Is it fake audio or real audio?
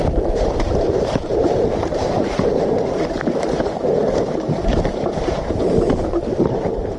fake